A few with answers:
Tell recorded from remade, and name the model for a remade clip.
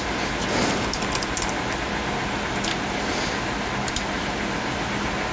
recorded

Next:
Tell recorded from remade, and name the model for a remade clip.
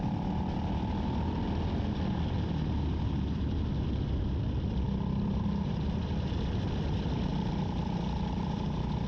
recorded